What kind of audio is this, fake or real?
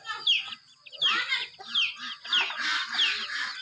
fake